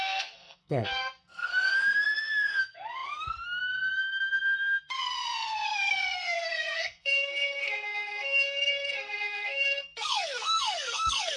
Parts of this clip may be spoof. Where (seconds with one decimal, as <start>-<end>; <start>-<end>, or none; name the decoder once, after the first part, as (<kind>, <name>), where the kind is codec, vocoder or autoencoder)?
0.0-11.4 (codec, SNAC)